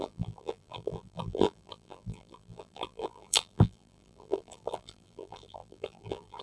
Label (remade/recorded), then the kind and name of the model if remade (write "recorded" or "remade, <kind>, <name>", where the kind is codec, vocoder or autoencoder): remade, vocoder, BigVGAN v2